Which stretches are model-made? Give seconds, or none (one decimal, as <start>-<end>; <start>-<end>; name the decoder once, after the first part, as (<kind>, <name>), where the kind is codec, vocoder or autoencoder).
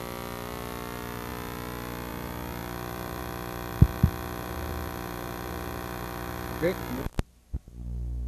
1.3-2.1 (vocoder, BigVGAN v2); 2.6-3.2; 4.7-6.8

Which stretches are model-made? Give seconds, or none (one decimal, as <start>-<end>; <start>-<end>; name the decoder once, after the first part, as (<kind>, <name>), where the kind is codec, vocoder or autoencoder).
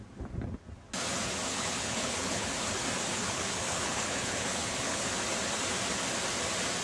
1.5-2.5 (codec, HILCodec); 3.1-5.1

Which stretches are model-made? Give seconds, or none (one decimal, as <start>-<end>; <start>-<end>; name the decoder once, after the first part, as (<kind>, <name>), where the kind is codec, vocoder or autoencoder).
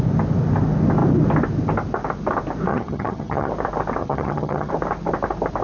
2.7-3.5 (vocoder, HiFi-GAN); 4.0-4.7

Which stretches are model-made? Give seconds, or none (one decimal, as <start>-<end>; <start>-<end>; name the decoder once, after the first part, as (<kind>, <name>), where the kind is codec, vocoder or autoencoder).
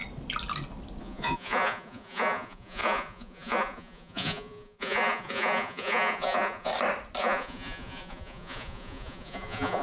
1.0-6.7 (vocoder, Vocos); 7.2-9.8